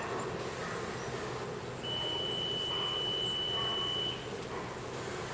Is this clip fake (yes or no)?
no